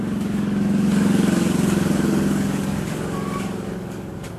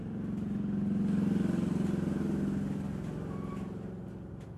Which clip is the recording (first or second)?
second